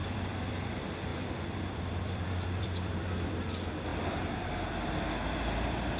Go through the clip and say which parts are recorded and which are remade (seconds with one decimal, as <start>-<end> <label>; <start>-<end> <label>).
0.0-0.7 remade; 0.7-1.1 recorded; 1.1-3.3 remade; 3.3-6.0 recorded